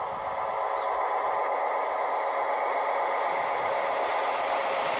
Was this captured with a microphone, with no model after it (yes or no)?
yes